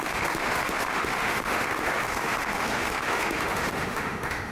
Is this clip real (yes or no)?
no